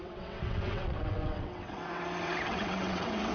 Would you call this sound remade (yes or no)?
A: yes